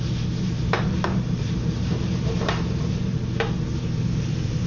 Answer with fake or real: real